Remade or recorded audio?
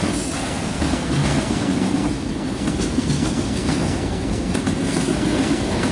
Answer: remade